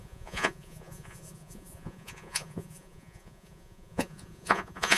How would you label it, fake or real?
fake